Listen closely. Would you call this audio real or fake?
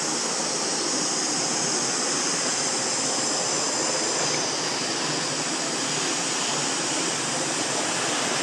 real